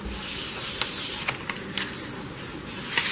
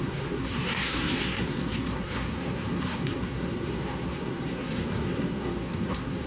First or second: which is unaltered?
first